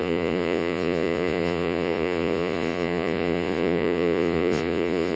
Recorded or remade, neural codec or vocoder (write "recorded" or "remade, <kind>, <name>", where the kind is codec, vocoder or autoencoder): remade, vocoder, Vocos